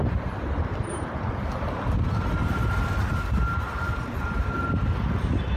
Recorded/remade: recorded